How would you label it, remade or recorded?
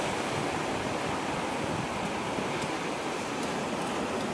recorded